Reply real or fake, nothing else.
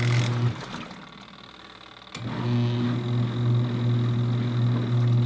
real